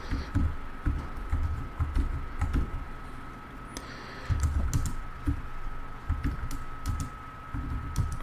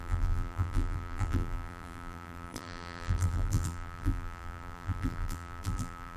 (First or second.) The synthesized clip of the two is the second